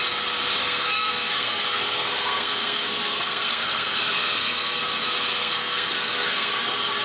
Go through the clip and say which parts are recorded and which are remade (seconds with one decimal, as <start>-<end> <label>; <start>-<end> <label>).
0.0-0.6 recorded; 0.6-4.8 remade; 4.8-5.4 recorded; 5.4-6.6 remade; 6.6-7.0 recorded